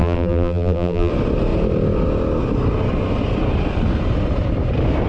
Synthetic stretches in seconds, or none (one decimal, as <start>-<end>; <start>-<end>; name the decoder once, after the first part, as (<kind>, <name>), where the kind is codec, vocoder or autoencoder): 0.0-1.1 (vocoder, BigVGAN v2)